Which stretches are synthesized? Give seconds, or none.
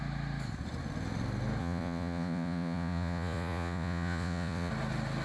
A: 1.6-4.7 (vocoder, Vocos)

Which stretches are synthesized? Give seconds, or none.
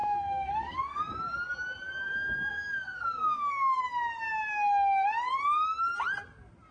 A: 0.0-1.0 (codec, SNAC); 2.5-3.8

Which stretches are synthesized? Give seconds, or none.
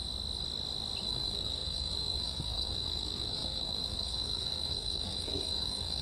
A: 1.0-6.0 (codec, SNAC)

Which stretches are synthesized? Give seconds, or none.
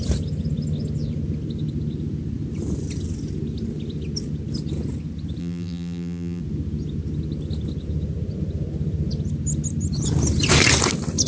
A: 5.4-6.4 (vocoder, BigVGAN v2)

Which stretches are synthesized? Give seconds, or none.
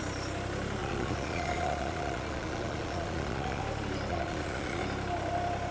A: 0.8-3.6 (vocoder, Vocos); 4.1-4.8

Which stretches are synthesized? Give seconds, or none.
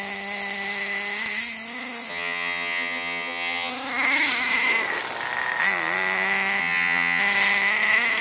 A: 2.1-3.7 (vocoder, HiFi-GAN); 6.6-7.2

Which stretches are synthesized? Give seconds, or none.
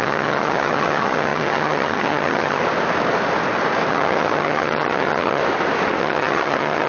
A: 0.0-2.6 (vocoder, HiFi-GAN); 3.9-5.4; 6.0-6.9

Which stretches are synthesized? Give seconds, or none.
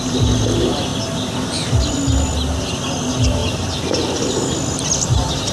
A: none